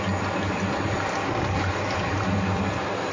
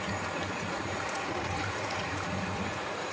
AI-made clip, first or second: second